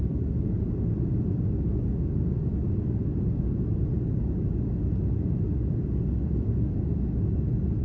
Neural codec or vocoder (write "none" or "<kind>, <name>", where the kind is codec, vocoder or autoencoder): none